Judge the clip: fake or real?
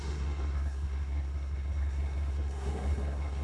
fake